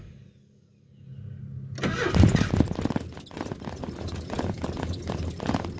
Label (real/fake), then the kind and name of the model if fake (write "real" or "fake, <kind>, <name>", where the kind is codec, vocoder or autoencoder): real